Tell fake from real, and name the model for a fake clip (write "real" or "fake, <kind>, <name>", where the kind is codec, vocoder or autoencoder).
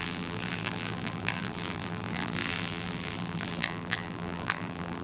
fake, vocoder, BigVGAN v2